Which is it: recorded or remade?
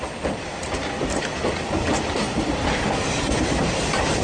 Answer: recorded